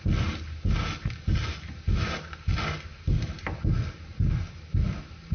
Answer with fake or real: real